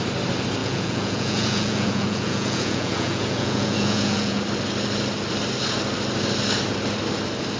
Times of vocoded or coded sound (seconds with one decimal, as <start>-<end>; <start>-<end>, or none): 0.6-4.4